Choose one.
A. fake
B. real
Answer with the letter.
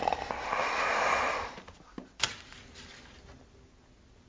B